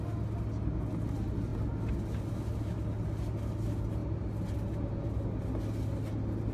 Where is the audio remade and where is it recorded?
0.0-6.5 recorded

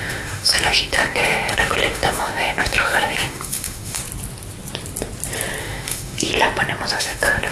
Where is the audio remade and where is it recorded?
0.0-4.0 remade; 4.0-5.6 recorded; 5.6-6.3 remade; 6.3-6.9 recorded; 6.9-7.5 remade

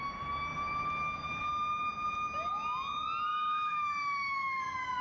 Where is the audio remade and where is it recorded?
0.0-3.3 recorded; 3.3-4.6 remade; 4.6-5.0 recorded